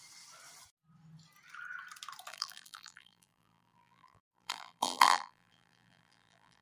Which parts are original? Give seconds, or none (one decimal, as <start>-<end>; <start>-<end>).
0.0-2.3